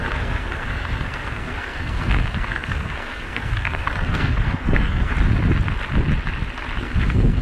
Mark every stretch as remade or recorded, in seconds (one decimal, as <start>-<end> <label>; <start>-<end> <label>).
0.0-5.1 remade; 5.1-6.8 recorded; 6.8-7.4 remade

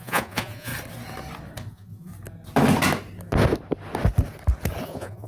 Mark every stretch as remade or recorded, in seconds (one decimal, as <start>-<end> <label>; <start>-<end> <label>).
0.0-0.7 remade; 0.7-1.7 recorded; 1.7-2.1 remade; 2.1-4.8 recorded; 4.8-5.3 remade

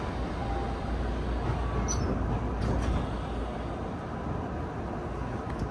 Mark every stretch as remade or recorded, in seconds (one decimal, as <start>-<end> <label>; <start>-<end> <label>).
0.0-5.7 recorded

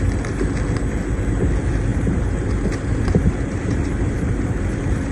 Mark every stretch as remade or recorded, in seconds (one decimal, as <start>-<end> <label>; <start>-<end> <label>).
0.0-1.9 recorded; 1.9-5.1 remade

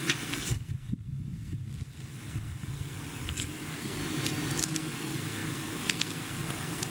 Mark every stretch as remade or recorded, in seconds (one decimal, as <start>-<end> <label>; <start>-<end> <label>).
0.0-4.0 remade; 4.0-4.6 recorded; 4.6-6.9 remade

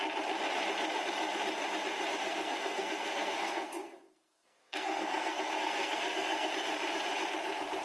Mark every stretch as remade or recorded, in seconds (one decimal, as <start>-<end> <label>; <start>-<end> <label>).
0.0-2.2 recorded; 2.2-6.5 remade; 6.5-7.8 recorded